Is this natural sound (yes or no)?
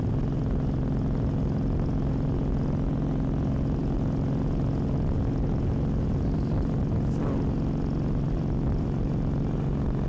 yes